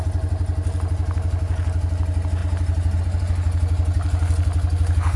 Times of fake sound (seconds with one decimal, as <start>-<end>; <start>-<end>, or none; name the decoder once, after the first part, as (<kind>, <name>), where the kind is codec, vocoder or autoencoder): none